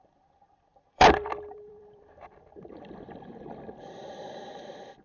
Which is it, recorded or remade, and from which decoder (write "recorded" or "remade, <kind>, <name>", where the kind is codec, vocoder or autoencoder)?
remade, vocoder, BigVGAN v2